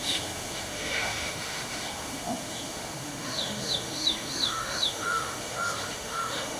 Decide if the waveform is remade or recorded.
remade